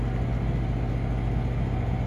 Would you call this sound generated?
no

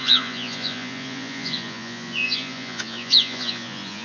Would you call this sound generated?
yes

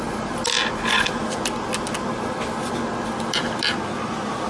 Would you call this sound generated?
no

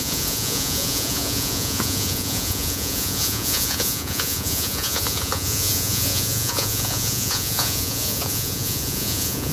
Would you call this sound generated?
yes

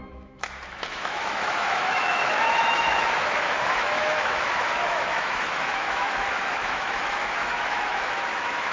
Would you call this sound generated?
yes